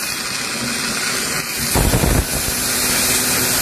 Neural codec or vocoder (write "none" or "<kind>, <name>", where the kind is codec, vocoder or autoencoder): none